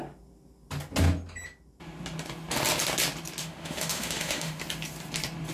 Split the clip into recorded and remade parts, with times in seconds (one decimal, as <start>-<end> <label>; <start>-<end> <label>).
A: 0.0-3.4 recorded; 3.4-4.6 remade; 4.6-5.5 recorded